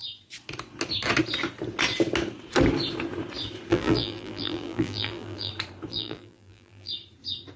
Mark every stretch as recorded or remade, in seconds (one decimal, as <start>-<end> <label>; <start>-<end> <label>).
0.0-3.7 recorded; 3.7-5.5 remade; 5.5-5.9 recorded; 5.9-6.9 remade; 6.9-7.6 recorded

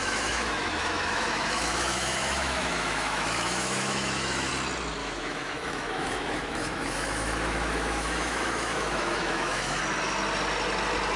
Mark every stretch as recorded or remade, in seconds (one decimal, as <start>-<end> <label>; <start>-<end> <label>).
0.0-4.5 remade; 4.5-5.0 recorded; 5.0-9.8 remade; 9.8-11.2 recorded

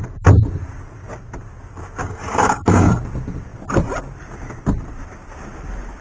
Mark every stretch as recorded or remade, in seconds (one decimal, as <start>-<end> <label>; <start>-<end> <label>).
0.0-2.0 recorded; 2.0-2.9 remade; 2.9-6.0 recorded